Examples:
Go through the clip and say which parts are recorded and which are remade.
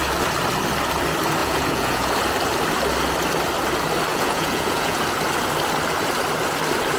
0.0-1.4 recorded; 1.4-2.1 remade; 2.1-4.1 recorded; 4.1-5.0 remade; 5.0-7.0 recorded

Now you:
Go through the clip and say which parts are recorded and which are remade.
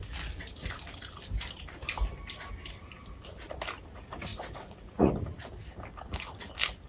0.0-4.3 recorded; 4.3-5.1 remade; 5.1-6.9 recorded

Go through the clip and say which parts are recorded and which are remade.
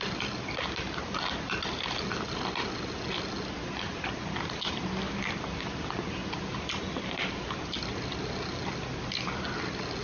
0.0-10.0 recorded